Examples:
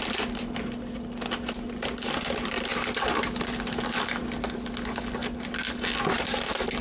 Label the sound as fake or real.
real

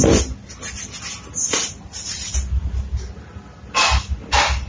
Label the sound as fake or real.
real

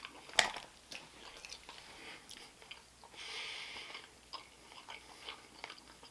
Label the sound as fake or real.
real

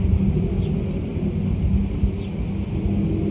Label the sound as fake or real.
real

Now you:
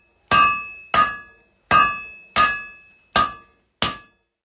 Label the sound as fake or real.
real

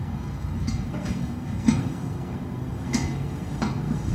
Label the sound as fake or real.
fake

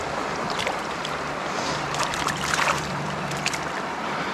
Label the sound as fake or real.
fake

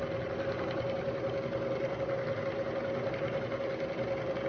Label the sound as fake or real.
real